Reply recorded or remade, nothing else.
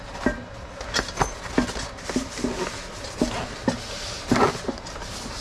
recorded